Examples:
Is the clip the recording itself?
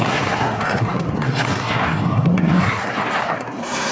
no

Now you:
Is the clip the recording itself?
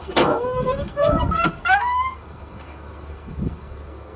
no